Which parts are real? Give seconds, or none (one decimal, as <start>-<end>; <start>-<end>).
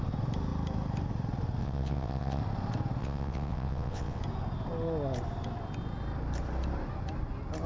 0.0-1.6; 2.4-3.0; 4.2-7.7